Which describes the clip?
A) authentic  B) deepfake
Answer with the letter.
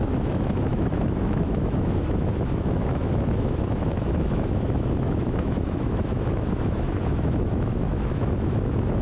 B